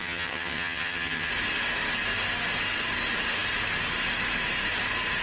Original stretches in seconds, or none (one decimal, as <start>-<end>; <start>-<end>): 1.3-5.2